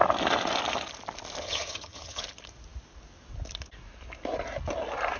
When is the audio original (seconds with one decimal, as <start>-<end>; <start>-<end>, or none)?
0.0-1.4; 2.2-5.2